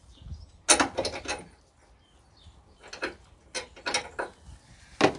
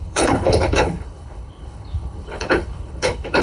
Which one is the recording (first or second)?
first